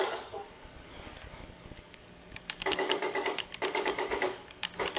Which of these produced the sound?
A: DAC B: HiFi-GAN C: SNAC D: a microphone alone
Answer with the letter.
A